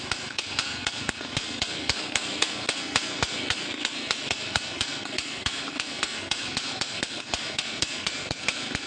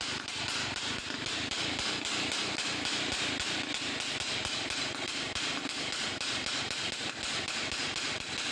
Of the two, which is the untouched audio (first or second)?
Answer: second